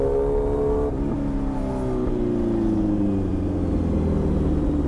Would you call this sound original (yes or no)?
yes